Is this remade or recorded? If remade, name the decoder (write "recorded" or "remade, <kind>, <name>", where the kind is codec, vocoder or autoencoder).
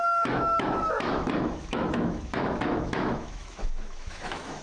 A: remade, autoencoder, DAC-VAE